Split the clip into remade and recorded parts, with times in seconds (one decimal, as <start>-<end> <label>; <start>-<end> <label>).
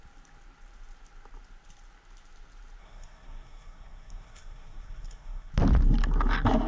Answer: 0.0-2.8 recorded; 2.8-5.5 remade; 5.5-6.7 recorded